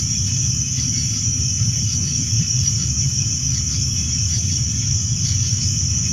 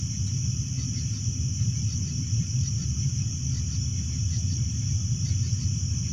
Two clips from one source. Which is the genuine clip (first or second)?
second